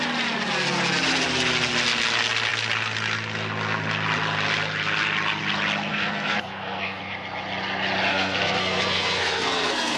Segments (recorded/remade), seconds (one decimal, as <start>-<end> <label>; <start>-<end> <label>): 0.0-5.9 recorded; 5.9-7.0 remade; 7.0-8.1 recorded; 8.1-10.0 remade

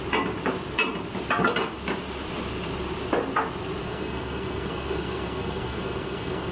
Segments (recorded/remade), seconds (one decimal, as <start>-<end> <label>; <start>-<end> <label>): 0.0-3.8 recorded; 3.8-6.5 remade

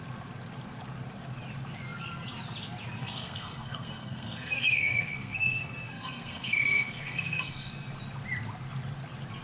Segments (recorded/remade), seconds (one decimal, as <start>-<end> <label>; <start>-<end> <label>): 0.0-3.0 recorded; 3.0-7.7 remade; 7.7-9.4 recorded